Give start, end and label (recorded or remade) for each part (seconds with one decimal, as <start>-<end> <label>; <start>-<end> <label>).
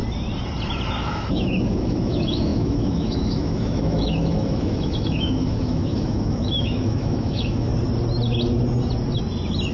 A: 0.0-1.0 recorded; 1.0-7.7 remade; 7.7-9.7 recorded